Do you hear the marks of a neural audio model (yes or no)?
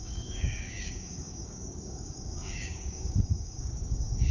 yes